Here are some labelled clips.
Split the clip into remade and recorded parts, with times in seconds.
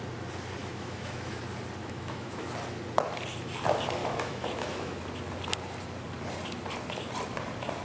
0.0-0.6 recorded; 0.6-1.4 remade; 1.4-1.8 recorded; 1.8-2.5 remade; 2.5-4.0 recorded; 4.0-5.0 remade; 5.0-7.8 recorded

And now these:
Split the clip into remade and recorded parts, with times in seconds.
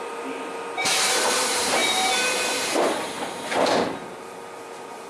0.0-5.1 remade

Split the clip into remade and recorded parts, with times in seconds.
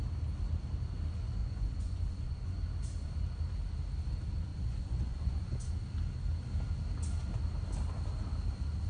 0.0-1.4 recorded; 1.4-2.6 remade; 2.6-4.5 recorded; 4.5-5.7 remade; 5.7-8.9 recorded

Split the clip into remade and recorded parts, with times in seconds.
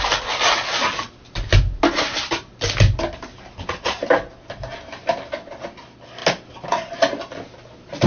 0.0-8.1 recorded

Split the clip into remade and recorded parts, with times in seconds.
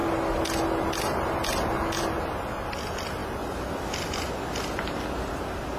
0.0-3.2 recorded; 3.2-5.3 remade; 5.3-5.8 recorded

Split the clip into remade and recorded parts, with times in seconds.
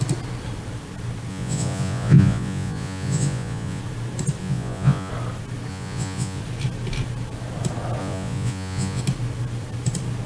0.0-1.3 recorded; 1.3-3.8 remade; 3.8-4.4 recorded; 4.4-5.1 remade; 5.1-5.7 recorded; 5.7-6.4 remade; 6.4-8.0 recorded; 8.0-9.0 remade; 9.0-10.3 recorded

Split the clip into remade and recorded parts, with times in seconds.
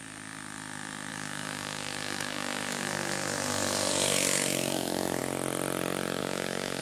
0.0-1.1 recorded; 1.1-5.2 remade; 5.2-6.2 recorded; 6.2-6.8 remade